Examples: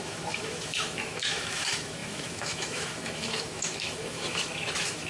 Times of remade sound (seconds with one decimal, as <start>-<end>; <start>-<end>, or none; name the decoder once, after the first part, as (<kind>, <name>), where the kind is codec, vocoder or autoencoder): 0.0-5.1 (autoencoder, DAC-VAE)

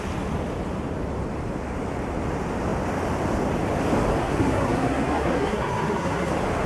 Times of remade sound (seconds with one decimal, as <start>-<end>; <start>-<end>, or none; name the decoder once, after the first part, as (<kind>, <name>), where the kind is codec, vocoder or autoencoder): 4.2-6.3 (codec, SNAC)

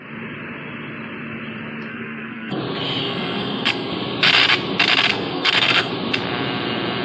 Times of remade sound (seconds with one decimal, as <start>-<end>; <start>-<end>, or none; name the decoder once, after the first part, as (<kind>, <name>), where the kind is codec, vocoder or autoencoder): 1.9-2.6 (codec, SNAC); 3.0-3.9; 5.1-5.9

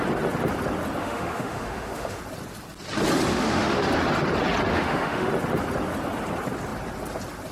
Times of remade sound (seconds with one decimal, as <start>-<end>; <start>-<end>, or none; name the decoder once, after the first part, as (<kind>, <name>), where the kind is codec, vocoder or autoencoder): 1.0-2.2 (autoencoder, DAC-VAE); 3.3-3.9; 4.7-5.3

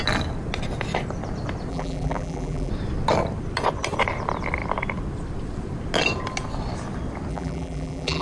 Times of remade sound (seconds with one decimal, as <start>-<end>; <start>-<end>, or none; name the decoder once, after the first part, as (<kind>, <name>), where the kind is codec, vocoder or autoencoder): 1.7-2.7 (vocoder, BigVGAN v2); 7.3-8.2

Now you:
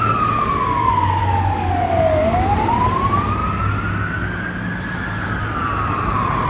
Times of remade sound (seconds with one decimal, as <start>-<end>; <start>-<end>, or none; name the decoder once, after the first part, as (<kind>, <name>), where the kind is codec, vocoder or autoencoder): 1.2-2.7 (codec, DAC)

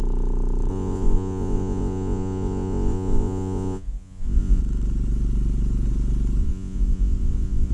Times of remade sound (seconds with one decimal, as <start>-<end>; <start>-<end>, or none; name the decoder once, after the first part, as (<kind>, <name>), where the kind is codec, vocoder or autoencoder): 0.7-4.6 (vocoder, Vocos); 6.4-7.7